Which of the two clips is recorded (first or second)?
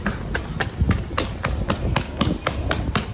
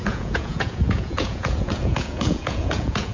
first